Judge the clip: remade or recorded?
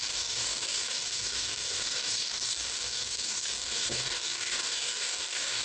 remade